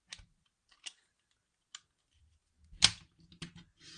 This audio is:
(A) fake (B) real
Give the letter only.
B